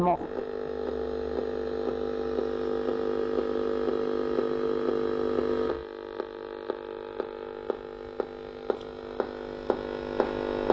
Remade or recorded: recorded